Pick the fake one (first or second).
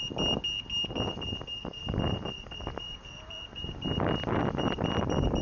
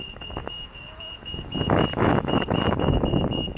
second